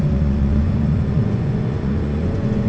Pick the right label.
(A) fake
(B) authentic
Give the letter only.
A